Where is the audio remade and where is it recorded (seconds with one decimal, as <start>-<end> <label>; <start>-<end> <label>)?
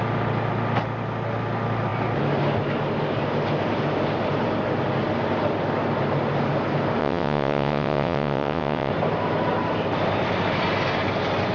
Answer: 0.0-7.0 recorded; 7.0-8.9 remade; 8.9-11.5 recorded